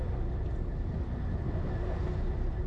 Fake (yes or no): no